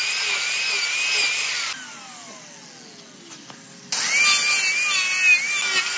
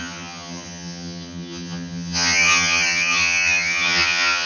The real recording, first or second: first